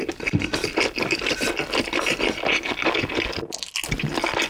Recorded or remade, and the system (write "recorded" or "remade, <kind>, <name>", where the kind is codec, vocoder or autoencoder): recorded